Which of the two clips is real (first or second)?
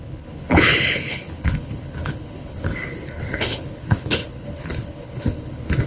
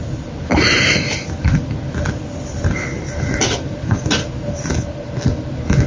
second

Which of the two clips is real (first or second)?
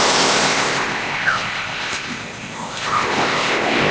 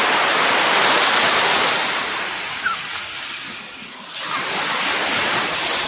second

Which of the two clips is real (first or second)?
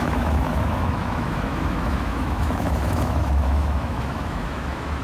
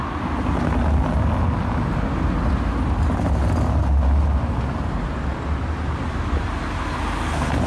second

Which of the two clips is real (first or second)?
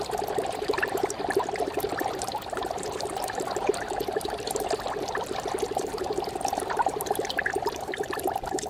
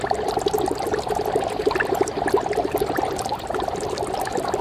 second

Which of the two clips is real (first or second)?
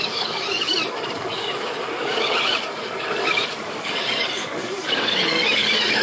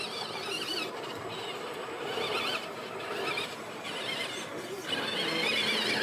second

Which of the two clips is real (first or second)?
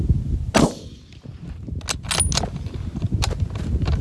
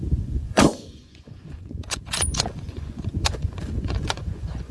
first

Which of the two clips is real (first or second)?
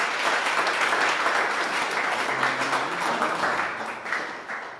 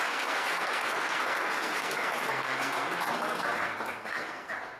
first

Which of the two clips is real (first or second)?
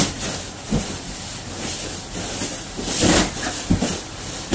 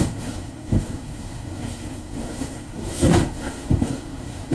first